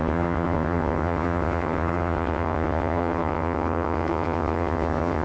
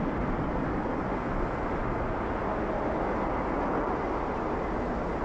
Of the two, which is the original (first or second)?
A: second